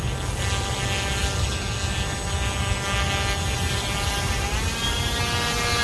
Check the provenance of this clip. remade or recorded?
recorded